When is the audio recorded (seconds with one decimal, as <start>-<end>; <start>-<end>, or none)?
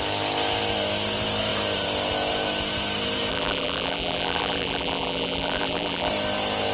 0.0-3.3; 6.1-6.7